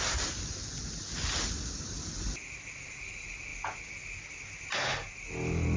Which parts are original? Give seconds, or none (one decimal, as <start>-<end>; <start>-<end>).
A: 0.0-5.8